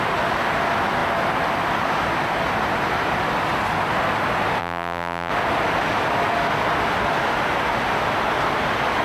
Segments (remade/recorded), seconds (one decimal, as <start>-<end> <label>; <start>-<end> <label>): 0.0-4.6 recorded; 4.6-5.3 remade; 5.3-9.0 recorded